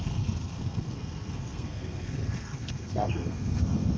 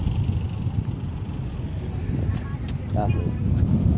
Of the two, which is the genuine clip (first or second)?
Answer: second